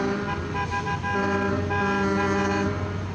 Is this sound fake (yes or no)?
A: no